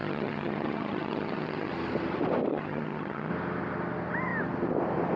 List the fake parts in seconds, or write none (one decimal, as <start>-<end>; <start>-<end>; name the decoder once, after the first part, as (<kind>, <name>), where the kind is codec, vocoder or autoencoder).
0.0-1.7 (vocoder, HiFi-GAN); 2.5-3.3